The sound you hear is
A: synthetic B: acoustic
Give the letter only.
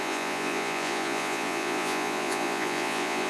A